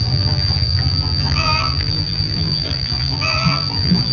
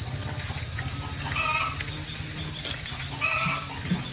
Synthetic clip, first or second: first